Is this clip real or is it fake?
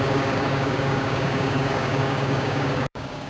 fake